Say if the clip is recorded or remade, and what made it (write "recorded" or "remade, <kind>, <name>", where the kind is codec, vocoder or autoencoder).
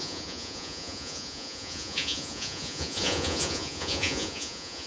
remade, vocoder, Vocos